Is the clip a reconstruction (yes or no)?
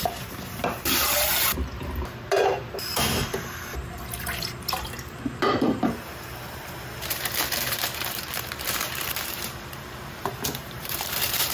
yes